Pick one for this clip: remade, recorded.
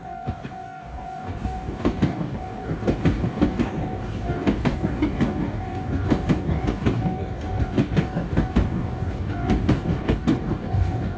remade